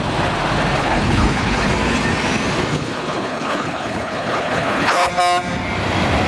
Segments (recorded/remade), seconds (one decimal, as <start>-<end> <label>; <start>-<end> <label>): 0.0-0.8 recorded; 0.8-1.7 remade; 1.7-2.7 recorded; 2.7-5.1 remade; 5.1-6.3 recorded